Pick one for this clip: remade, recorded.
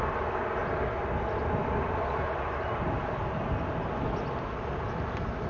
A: recorded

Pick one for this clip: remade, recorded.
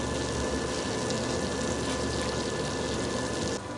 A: recorded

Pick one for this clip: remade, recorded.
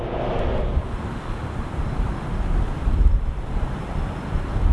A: recorded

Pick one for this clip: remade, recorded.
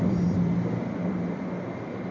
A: recorded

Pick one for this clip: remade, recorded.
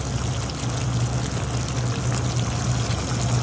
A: recorded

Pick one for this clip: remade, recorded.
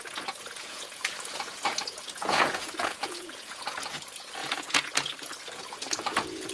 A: remade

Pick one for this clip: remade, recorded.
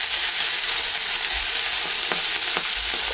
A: recorded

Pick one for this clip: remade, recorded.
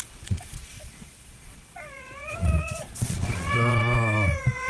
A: remade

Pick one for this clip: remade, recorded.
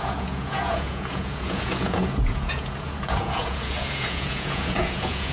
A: remade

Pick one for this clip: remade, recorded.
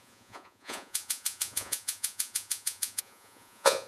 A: remade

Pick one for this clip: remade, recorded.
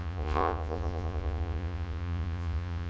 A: remade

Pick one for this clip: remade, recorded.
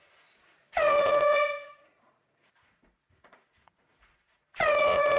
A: remade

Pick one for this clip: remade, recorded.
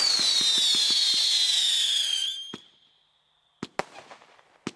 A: recorded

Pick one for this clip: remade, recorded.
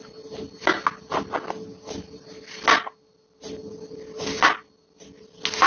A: recorded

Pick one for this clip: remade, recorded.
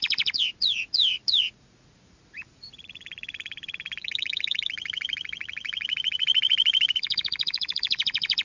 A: remade